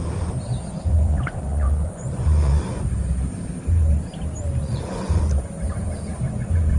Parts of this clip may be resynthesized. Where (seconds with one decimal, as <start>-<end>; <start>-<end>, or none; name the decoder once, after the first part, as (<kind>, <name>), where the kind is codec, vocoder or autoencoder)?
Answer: 0.9-2.9 (vocoder, Vocos); 4.6-5.2